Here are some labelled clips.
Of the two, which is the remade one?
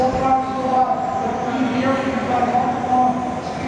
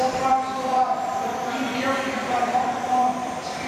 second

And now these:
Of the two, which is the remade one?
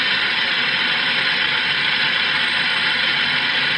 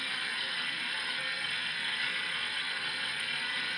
second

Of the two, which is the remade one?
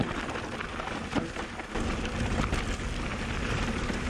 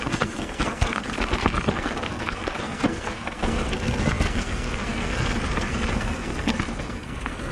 second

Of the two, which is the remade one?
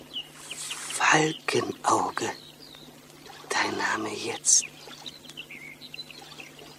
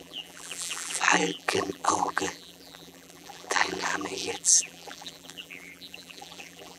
second